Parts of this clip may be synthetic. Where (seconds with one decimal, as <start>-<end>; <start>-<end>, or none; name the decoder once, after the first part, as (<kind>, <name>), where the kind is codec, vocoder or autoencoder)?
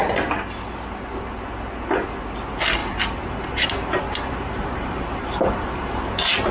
2.8-6.0 (vocoder, BigVGAN v2)